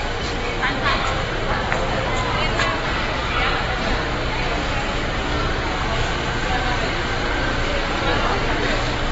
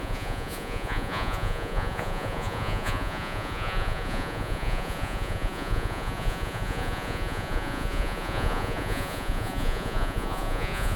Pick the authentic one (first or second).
first